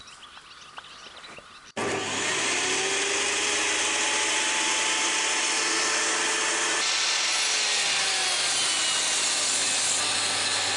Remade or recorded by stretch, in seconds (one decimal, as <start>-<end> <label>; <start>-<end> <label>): 0.0-10.8 recorded